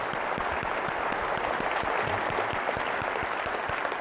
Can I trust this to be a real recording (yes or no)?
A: yes